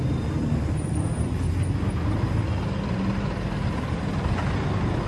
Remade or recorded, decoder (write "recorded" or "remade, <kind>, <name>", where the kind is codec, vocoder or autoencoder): recorded